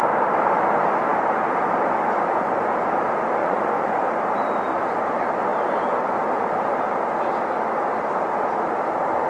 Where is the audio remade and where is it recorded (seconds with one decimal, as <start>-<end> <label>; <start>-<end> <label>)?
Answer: 0.0-3.4 recorded; 3.4-4.0 remade; 4.0-9.3 recorded